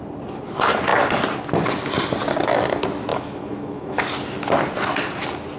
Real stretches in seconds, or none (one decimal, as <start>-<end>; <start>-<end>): 0.0-3.1; 4.0-5.6